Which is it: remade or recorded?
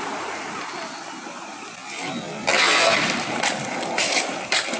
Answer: remade